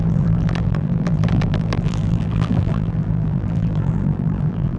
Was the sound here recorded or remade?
remade